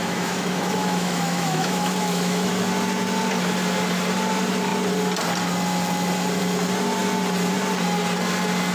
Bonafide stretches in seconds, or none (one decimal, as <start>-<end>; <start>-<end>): 2.5-8.7